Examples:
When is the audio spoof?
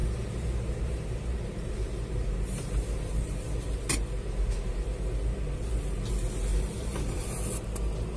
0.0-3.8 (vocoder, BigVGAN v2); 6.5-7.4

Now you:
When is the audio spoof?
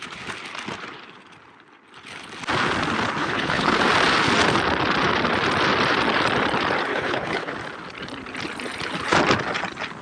3.2-3.8 (codec, HILCodec); 6.9-7.5